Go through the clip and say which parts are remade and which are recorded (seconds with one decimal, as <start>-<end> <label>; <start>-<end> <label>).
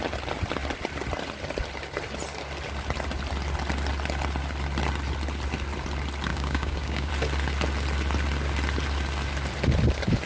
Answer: 0.0-6.3 recorded; 6.3-7.1 remade; 7.1-10.3 recorded